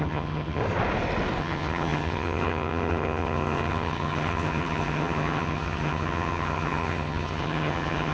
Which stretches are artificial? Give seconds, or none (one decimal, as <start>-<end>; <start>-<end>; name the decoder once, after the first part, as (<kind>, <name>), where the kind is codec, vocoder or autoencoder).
0.0-0.6 (vocoder, HiFi-GAN); 1.4-8.1